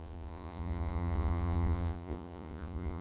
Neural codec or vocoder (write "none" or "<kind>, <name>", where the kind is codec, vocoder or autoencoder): vocoder, Vocos